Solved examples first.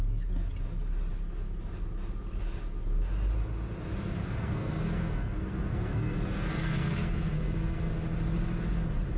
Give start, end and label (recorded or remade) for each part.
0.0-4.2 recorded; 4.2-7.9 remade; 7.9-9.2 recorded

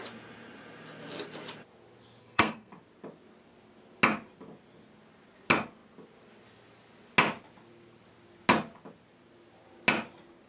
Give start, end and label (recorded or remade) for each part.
0.0-2.2 recorded; 2.2-2.7 remade; 2.7-10.5 recorded

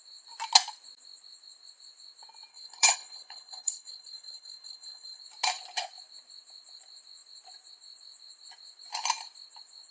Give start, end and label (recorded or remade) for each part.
0.0-2.5 recorded; 2.5-5.2 remade; 5.2-9.9 recorded